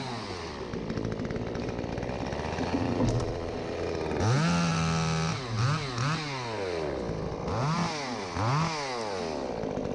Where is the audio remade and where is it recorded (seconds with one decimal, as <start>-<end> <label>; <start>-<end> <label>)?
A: 0.0-9.9 recorded